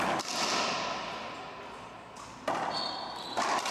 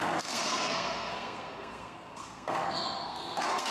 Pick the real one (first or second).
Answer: first